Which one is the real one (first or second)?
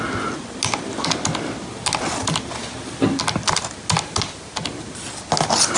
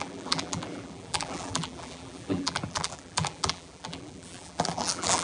first